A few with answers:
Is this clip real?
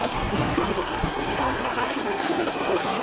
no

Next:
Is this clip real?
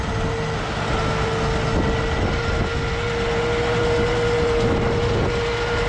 yes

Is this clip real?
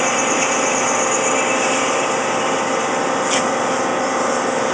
yes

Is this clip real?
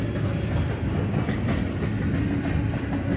yes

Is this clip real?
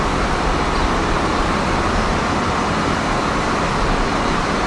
yes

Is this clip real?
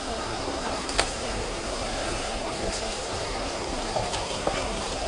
no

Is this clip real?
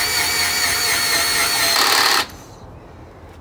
yes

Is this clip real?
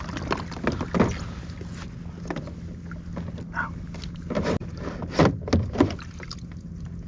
yes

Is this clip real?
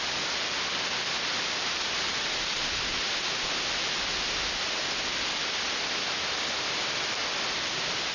yes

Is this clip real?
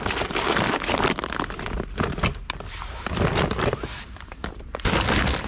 yes